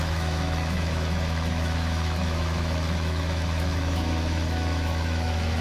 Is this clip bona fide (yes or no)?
no